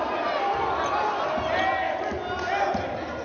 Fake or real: real